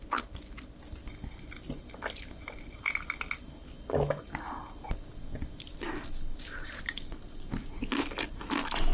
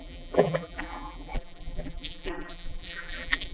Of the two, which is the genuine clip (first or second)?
first